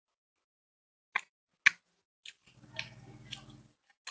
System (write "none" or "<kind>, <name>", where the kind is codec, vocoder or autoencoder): none